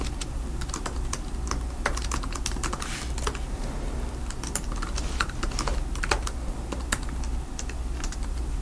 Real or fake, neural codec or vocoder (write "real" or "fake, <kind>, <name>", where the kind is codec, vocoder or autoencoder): real